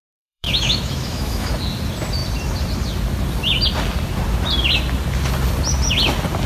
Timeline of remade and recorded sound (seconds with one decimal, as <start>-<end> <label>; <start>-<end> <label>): 0.0-1.5 remade; 1.5-6.5 recorded